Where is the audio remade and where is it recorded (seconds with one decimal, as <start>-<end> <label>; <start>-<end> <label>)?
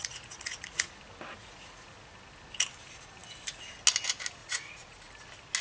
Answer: 0.0-0.9 remade; 0.9-1.4 recorded; 1.4-1.9 remade; 1.9-4.4 recorded; 4.4-5.1 remade; 5.1-5.6 recorded